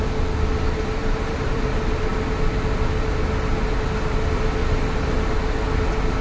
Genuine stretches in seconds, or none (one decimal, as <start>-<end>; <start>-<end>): 0.0-1.0; 1.6-4.6; 5.1-6.2